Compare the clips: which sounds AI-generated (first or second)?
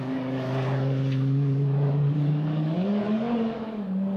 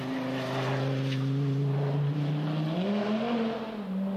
first